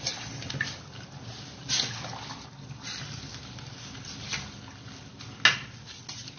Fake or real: real